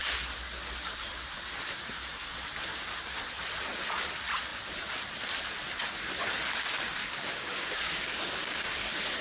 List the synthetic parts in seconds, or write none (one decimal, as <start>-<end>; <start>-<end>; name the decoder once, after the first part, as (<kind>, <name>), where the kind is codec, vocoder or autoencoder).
2.7-3.2 (codec, DAC); 7.0-9.2